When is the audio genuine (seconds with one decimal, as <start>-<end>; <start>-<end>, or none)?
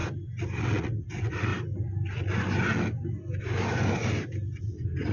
0.0-0.6; 1.5-4.6